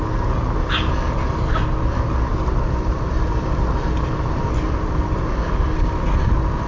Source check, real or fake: real